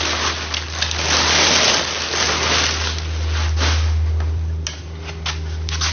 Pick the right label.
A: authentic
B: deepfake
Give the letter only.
A